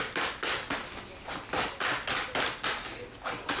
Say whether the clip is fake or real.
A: real